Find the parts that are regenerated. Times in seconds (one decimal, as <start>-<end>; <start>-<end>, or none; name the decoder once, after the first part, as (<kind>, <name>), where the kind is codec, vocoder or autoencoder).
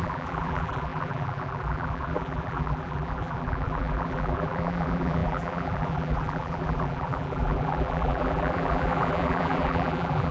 0.0-10.3 (vocoder, BigVGAN v2)